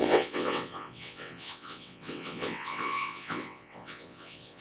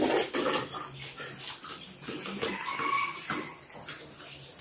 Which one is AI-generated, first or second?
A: first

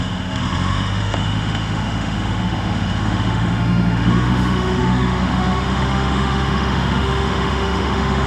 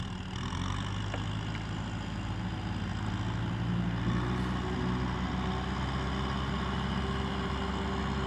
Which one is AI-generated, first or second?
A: first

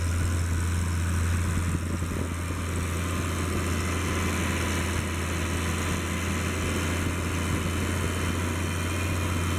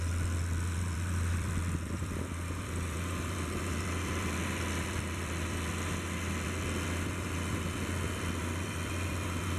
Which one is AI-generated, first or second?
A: second